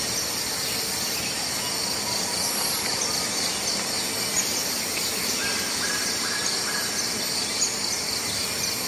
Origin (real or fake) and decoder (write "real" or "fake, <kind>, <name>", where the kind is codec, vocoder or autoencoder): real